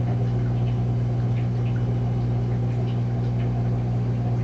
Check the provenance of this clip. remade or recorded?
recorded